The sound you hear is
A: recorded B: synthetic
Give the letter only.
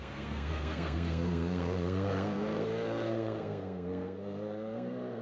B